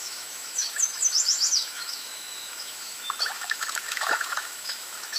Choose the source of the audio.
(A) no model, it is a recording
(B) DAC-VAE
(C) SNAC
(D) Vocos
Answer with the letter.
B